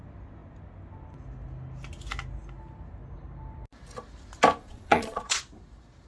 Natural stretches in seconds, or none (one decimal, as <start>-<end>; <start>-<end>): 0.0-4.6; 5.4-6.1